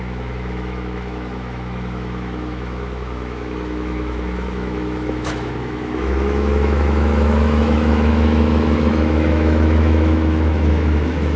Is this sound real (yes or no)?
no